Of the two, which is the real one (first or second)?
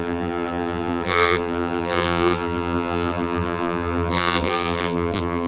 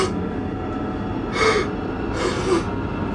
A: second